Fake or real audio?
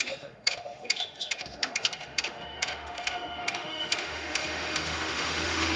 fake